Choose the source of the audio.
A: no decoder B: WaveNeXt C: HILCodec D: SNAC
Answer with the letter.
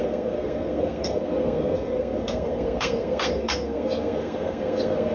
D